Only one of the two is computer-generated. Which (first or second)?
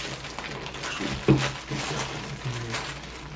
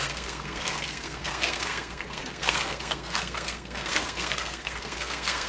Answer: second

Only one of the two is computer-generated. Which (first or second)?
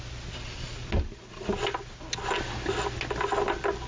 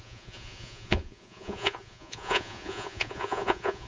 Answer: second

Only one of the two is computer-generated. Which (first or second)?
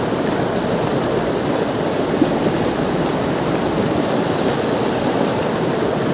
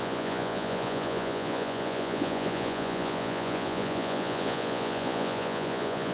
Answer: second